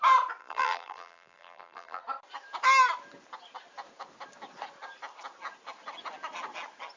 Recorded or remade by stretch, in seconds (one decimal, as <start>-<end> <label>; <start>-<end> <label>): 0.0-0.4 recorded; 0.4-2.0 remade; 2.0-7.0 recorded